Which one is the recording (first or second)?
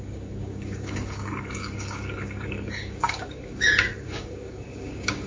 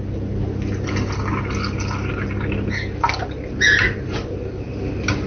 second